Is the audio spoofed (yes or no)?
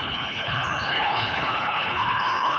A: yes